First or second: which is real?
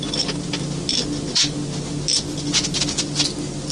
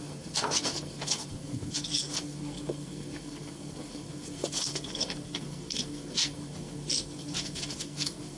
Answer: first